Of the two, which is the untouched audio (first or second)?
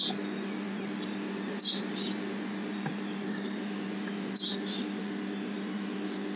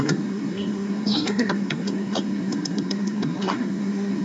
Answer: first